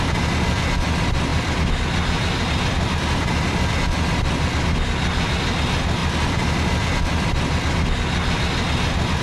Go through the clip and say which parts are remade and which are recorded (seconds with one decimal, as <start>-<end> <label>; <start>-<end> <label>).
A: 0.0-1.3 recorded; 1.3-3.7 remade; 3.7-6.0 recorded; 6.0-7.3 remade; 7.3-9.2 recorded